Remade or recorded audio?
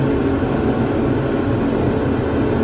recorded